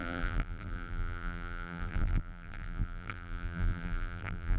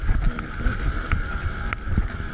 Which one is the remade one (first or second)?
first